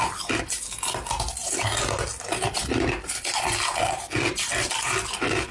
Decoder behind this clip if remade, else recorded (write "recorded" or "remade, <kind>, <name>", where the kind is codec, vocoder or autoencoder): recorded